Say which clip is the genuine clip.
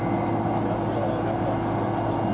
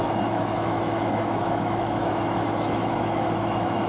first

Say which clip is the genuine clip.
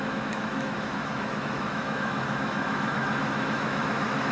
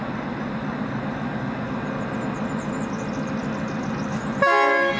second